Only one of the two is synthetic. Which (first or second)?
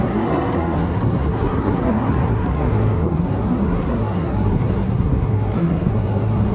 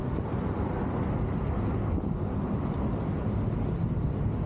first